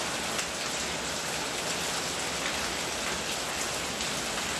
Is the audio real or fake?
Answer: real